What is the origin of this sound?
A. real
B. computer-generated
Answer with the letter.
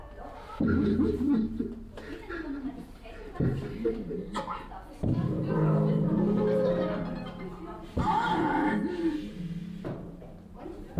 B